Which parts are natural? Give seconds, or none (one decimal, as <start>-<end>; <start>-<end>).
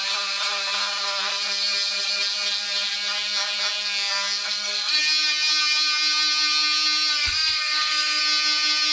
0.0-4.4; 5.0-7.2; 8.2-8.9